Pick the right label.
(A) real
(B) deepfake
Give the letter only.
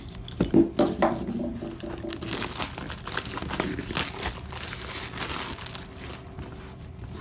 A